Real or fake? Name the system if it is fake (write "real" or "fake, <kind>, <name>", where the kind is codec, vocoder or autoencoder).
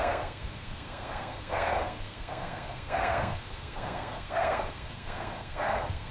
fake, codec, SNAC